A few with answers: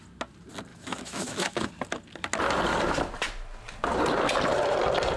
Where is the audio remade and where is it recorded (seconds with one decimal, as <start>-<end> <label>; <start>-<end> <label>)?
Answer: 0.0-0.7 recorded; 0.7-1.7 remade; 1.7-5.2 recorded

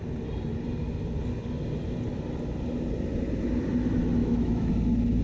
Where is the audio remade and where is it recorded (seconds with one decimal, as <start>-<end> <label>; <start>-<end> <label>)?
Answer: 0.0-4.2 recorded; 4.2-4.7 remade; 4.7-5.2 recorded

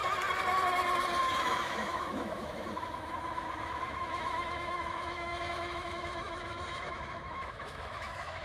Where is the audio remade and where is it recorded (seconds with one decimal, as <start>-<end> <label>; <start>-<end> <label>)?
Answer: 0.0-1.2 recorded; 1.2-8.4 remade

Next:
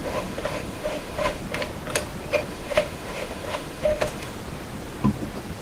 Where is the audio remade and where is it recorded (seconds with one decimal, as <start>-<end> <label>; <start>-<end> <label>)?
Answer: 0.0-1.4 remade; 1.4-2.5 recorded; 2.5-4.3 remade; 4.3-5.6 recorded

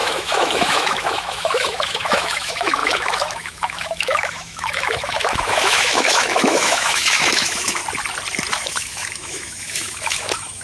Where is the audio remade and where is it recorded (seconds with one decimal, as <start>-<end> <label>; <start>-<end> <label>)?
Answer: 0.0-7.8 remade; 7.8-8.5 recorded; 8.5-10.6 remade